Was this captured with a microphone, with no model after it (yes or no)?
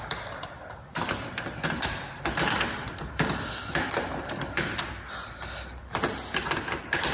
no